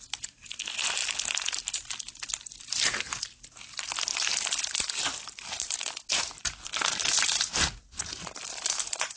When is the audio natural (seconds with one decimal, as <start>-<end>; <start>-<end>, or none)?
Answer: 0.0-9.2

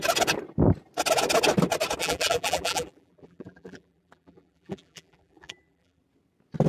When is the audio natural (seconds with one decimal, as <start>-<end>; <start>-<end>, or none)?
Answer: 0.0-2.0; 6.0-6.7

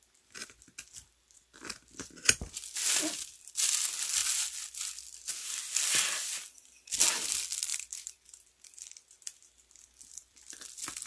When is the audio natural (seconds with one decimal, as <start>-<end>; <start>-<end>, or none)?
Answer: 0.0-0.4; 2.6-7.7